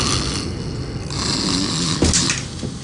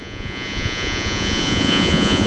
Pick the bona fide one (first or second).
first